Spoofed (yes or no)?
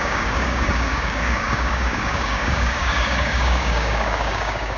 yes